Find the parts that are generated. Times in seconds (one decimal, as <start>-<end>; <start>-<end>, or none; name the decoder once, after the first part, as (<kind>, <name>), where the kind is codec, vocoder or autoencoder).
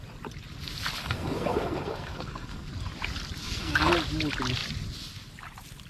1.0-2.7 (codec, SNAC); 3.4-3.9